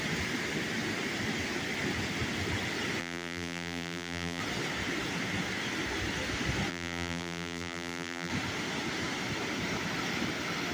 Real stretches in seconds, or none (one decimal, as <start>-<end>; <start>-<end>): 0.0-3.0; 4.4-6.7; 8.3-10.7

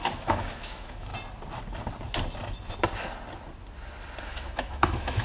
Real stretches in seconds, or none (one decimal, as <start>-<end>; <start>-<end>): 1.1-4.2

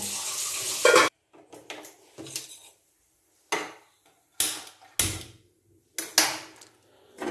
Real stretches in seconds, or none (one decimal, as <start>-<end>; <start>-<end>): 0.0-7.3

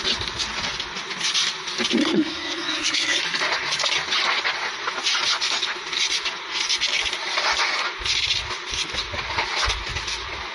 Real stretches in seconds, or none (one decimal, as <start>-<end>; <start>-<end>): 0.0-2.0; 3.2-10.5